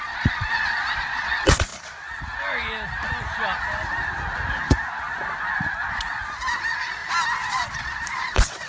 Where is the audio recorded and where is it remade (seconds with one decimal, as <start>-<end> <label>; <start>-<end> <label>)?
0.0-1.7 remade; 1.7-6.6 recorded; 6.6-7.0 remade; 7.0-7.5 recorded; 7.5-8.7 remade